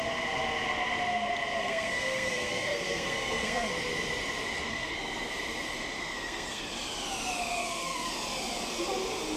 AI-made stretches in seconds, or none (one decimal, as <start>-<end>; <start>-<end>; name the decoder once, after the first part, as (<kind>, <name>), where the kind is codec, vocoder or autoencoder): 1.6-3.7 (codec, SNAC); 4.7-5.3; 6.0-6.6; 7.6-8.1